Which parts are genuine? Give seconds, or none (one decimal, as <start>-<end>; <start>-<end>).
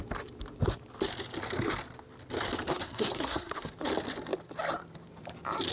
0.0-2.7; 3.7-5.7